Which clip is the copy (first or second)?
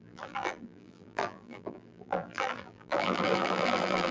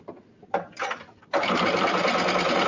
first